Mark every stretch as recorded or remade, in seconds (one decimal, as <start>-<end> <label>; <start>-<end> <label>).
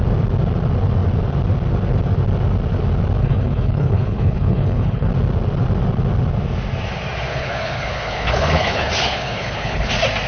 0.0-3.2 recorded; 3.2-5.1 remade; 5.1-7.3 recorded; 7.3-9.9 remade; 9.9-10.3 recorded